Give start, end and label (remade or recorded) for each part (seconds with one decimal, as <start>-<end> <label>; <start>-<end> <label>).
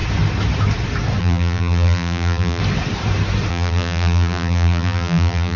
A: 0.0-1.2 recorded; 1.2-2.6 remade; 2.6-3.5 recorded; 3.5-5.6 remade